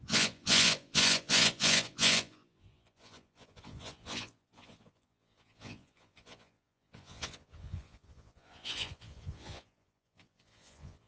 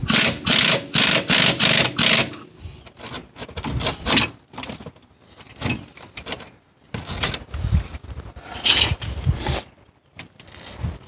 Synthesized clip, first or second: first